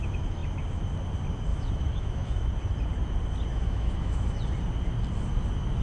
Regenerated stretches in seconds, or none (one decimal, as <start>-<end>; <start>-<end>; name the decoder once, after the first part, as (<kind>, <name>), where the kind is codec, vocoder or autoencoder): 1.5-2.5 (autoencoder, DAC-VAE); 3.5-4.4